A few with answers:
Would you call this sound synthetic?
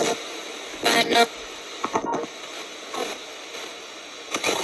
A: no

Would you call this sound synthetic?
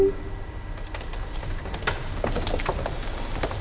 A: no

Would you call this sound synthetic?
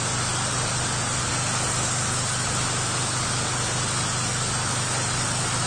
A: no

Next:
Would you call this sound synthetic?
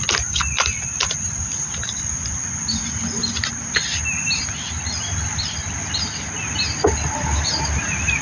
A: no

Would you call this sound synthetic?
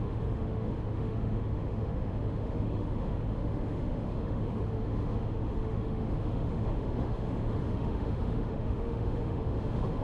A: yes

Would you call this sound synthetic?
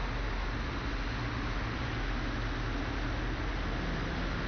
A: no